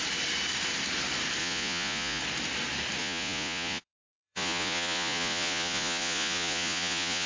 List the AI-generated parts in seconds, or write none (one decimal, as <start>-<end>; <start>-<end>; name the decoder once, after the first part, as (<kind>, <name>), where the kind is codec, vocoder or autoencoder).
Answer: 1.4-2.2 (vocoder, Vocos); 3.0-7.3